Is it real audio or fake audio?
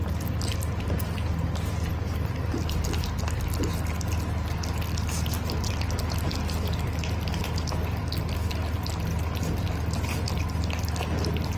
real